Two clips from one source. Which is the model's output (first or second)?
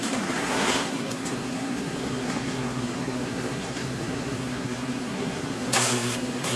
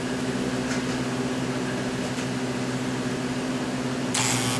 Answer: first